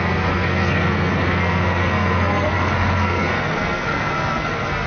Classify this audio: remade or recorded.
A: remade